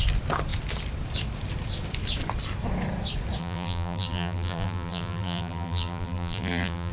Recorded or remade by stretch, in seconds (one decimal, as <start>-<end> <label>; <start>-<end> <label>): 0.0-3.4 recorded; 3.4-6.9 remade